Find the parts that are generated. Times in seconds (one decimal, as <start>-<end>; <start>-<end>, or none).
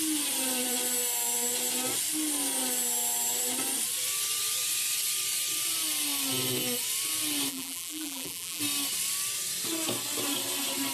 7.5-8.6